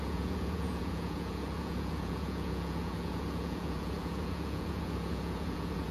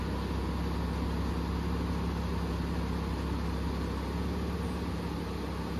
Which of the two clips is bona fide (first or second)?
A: second